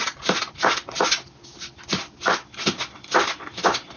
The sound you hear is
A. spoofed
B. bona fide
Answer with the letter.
B